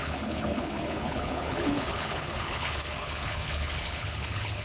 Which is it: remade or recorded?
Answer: remade